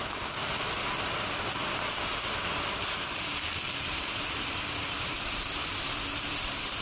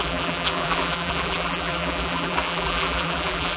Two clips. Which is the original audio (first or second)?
first